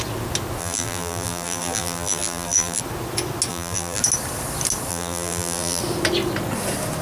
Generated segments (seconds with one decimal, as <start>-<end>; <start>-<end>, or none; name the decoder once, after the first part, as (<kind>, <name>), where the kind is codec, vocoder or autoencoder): 0.6-2.8 (vocoder, BigVGAN v2); 3.5-4.0; 4.9-5.8